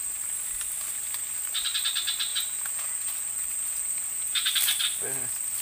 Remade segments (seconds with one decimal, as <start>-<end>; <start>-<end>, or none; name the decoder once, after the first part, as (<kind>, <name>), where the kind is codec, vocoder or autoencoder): 2.3-3.2 (vocoder, Vocos); 3.6-4.5